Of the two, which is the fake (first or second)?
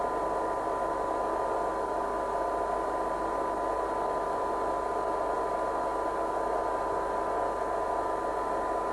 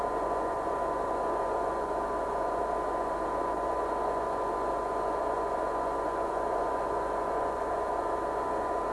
second